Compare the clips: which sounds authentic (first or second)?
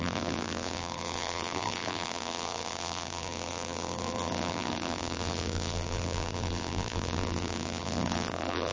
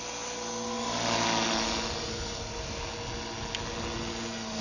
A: second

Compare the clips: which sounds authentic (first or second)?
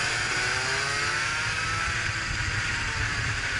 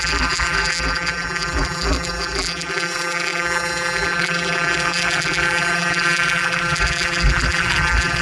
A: first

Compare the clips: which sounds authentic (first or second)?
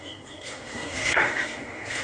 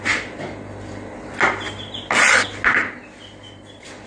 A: second